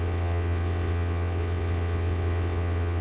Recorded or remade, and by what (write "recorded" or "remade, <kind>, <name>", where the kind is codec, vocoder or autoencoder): remade, vocoder, WaveNeXt